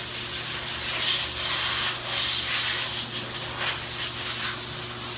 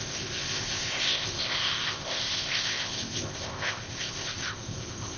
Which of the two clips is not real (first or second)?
second